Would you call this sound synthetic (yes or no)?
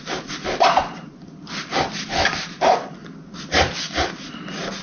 no